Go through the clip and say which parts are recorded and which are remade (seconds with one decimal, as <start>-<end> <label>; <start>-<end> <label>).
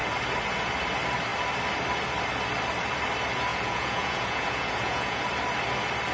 0.0-3.5 recorded; 3.5-5.2 remade; 5.2-6.1 recorded